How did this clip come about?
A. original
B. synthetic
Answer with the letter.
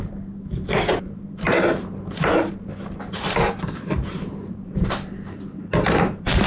B